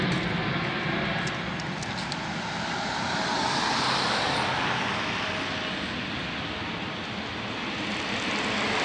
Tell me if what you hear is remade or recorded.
recorded